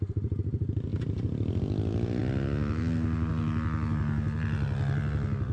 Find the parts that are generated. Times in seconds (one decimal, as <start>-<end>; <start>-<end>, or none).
none